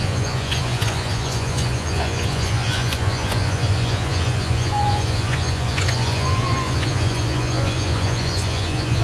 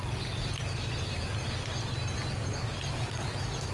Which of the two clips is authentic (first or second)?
second